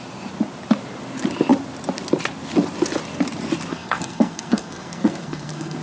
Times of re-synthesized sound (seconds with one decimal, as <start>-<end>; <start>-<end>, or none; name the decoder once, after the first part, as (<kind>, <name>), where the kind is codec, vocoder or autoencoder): 3.7-5.8 (codec, SNAC)